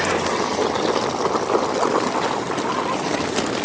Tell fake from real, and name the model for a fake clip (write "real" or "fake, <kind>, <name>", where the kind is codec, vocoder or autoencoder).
real